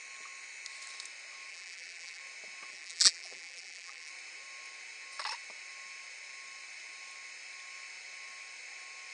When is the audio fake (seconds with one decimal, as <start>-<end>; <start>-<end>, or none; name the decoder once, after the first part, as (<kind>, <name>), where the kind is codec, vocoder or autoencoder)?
1.5-2.2 (vocoder, BigVGAN v2); 2.7-4.1